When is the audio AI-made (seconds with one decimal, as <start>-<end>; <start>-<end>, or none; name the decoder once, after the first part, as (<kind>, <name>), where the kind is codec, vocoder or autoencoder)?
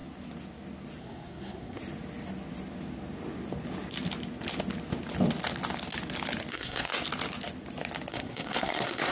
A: 1.0-1.8 (codec, SNAC); 6.5-6.9; 8.1-9.1